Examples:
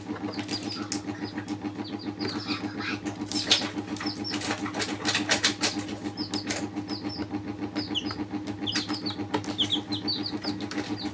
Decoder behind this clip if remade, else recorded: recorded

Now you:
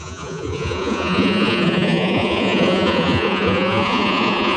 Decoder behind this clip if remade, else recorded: remade, vocoder, Vocos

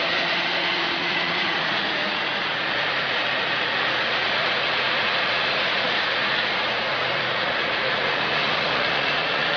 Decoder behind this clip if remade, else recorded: remade, vocoder, Vocos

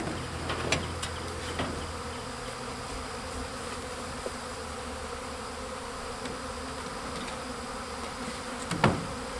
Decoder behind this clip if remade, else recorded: recorded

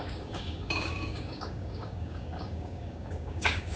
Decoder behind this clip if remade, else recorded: remade, codec, DAC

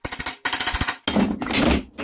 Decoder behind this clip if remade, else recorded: recorded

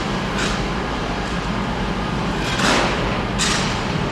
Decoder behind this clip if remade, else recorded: remade, vocoder, BigVGAN v2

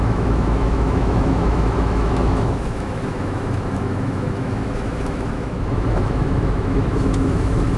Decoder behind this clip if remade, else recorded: remade, autoencoder, DAC-VAE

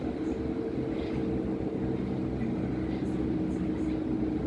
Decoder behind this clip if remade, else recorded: recorded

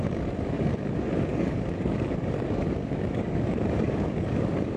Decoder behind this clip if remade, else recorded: remade, codec, DAC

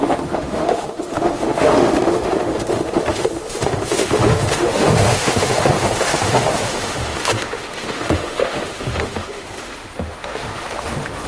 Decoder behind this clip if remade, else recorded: remade, autoencoder, DAC-VAE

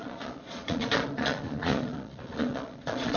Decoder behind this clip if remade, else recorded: remade, vocoder, Vocos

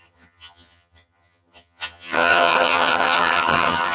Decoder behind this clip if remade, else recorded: remade, vocoder, HiFi-GAN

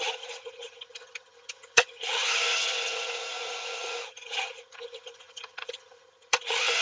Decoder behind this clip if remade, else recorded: remade, vocoder, HiFi-GAN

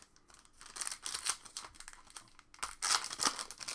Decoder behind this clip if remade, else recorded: recorded